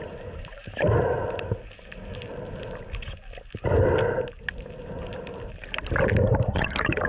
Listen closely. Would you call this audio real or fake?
real